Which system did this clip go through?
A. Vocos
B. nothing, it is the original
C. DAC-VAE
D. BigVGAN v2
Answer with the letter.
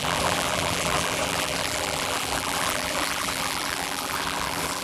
D